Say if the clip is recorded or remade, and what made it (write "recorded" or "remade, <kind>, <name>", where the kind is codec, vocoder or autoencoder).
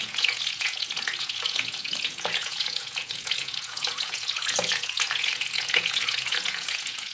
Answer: remade, vocoder, Vocos